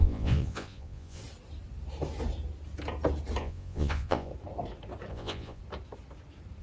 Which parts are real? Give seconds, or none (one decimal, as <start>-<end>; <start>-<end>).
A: 1.2-3.4; 4.3-5.1; 5.6-6.6

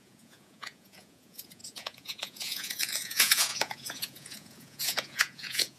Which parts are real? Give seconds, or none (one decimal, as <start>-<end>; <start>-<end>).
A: none

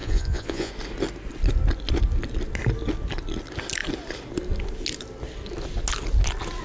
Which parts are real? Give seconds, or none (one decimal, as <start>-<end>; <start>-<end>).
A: 0.7-6.6

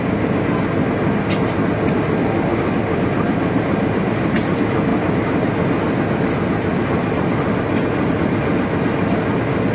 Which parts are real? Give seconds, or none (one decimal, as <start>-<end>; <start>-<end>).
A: 0.0-9.7

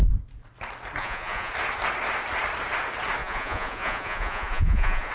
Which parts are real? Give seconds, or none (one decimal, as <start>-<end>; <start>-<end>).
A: 0.0-1.0; 1.5-3.2